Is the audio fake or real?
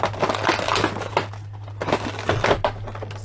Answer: real